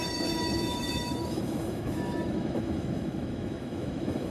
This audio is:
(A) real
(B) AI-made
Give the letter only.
B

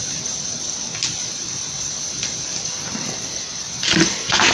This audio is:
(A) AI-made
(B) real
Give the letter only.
A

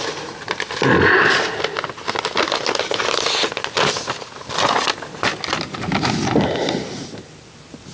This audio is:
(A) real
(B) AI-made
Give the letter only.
A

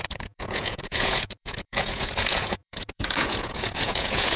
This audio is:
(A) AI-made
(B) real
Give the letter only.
A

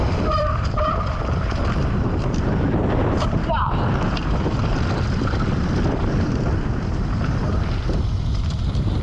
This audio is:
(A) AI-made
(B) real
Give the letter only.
A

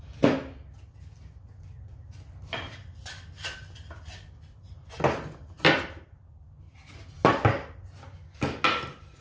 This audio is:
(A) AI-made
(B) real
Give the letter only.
B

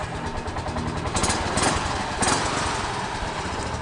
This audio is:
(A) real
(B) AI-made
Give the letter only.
A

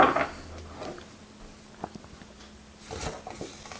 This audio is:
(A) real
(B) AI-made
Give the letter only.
A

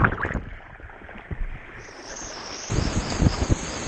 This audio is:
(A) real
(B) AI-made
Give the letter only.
B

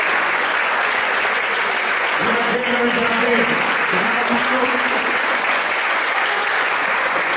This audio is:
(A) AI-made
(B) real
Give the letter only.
A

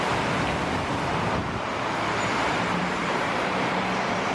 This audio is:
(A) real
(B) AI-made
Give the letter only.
B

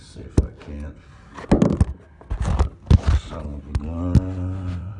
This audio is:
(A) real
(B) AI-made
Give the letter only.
A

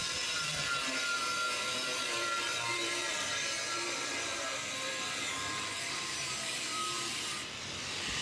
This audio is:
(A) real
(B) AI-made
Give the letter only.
B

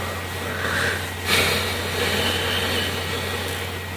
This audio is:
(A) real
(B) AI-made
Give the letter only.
A